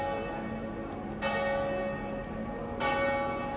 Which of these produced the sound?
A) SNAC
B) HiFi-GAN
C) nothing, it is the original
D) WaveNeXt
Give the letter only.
C